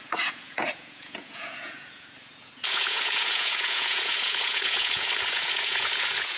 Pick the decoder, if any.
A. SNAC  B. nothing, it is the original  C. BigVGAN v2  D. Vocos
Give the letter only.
D